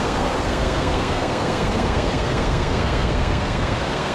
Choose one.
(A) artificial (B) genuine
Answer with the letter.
A